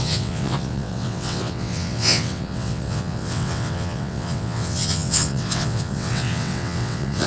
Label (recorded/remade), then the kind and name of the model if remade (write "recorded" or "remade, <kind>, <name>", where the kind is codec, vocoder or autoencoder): remade, vocoder, WaveNeXt